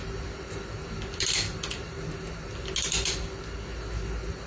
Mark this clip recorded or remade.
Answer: recorded